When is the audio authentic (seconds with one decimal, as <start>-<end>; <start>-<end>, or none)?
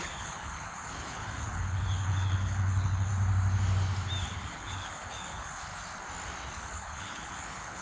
3.1-4.2; 5.7-6.5